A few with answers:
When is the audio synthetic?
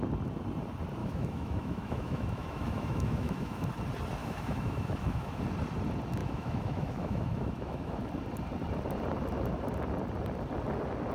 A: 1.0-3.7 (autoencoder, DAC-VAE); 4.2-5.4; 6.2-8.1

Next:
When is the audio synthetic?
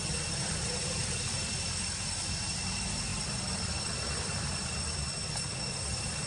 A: 0.4-1.5 (vocoder, BigVGAN v2); 3.1-5.6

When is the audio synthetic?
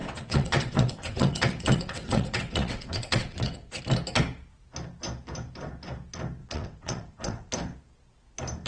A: 0.0-3.8 (vocoder, WaveNeXt); 6.4-7.5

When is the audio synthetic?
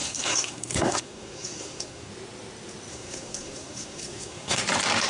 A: 0.0-2.1 (codec, SNAC); 2.9-4.6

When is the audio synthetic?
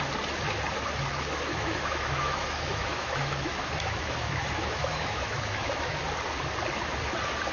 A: 1.5-6.0 (autoencoder, DAC-VAE)